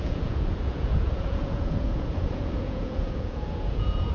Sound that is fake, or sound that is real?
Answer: fake